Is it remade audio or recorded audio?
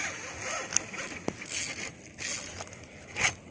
recorded